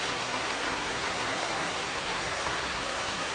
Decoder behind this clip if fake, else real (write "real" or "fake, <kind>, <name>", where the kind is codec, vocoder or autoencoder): fake, codec, SNAC